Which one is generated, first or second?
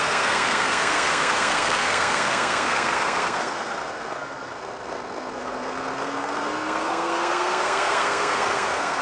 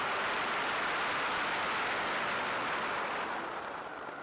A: first